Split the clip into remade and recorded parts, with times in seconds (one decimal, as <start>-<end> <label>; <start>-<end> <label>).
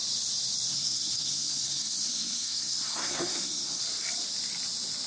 0.0-0.7 recorded; 0.7-3.8 remade; 3.8-5.1 recorded